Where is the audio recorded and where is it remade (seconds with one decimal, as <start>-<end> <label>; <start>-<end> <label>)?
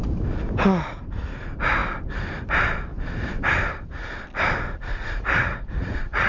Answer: 0.0-4.9 recorded; 4.9-6.3 remade